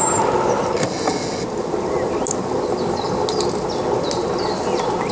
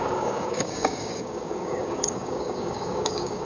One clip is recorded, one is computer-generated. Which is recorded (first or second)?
first